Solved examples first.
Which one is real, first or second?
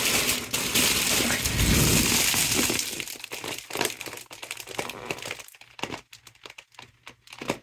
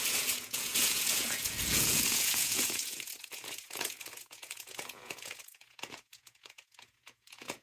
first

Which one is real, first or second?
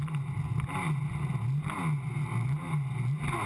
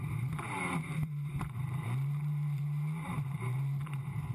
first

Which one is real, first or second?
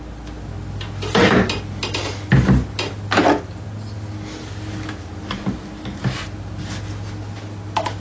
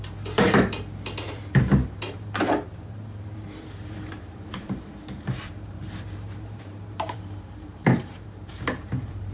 first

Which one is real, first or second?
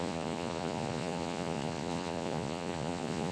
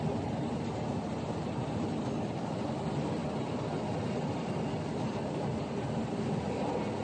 second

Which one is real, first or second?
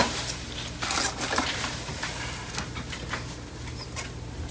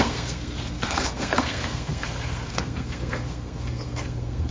first